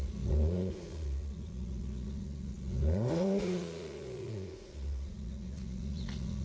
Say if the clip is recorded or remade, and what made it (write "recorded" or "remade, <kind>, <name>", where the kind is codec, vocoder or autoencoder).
remade, vocoder, Vocos